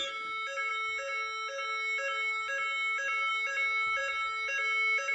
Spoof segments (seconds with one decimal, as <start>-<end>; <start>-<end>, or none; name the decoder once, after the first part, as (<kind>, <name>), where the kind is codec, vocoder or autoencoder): none